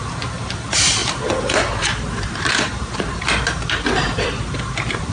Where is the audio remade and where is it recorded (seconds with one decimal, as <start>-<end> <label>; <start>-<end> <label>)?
0.0-1.0 remade; 1.0-1.8 recorded; 1.8-5.1 remade